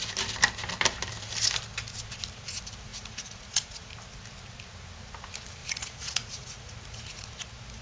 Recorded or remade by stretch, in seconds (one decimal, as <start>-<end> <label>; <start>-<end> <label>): 0.0-2.9 recorded; 2.9-3.9 remade; 3.9-5.6 recorded; 5.6-7.3 remade; 7.3-7.8 recorded